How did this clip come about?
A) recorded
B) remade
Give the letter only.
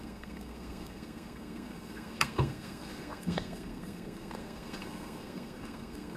B